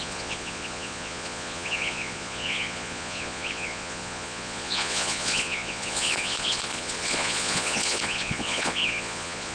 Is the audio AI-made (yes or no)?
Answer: yes